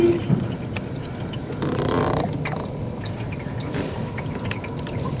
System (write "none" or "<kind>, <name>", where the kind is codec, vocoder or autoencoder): vocoder, BigVGAN v2